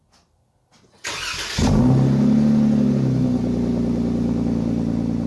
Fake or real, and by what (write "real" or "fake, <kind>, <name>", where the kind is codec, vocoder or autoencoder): real